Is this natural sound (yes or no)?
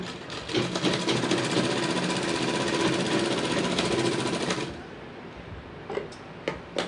yes